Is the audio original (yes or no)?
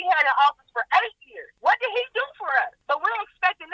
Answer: yes